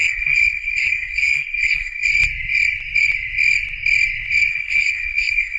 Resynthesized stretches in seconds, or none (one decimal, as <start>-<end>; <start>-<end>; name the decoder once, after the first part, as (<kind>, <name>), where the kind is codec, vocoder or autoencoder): 0.0-2.1 (codec, SNAC); 4.5-5.6